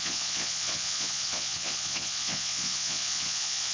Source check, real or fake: fake